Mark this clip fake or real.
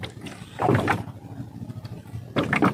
real